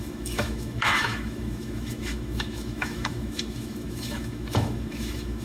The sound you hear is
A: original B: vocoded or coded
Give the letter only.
B